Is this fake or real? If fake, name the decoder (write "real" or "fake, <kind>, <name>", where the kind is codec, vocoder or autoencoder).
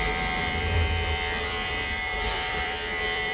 fake, vocoder, BigVGAN v2